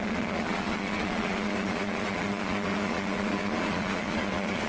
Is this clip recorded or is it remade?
remade